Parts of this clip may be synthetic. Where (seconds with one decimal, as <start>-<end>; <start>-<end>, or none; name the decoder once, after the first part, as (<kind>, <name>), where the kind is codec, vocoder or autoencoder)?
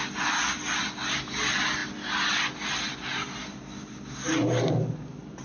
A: none